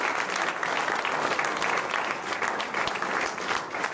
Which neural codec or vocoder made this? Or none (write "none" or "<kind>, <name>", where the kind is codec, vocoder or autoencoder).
none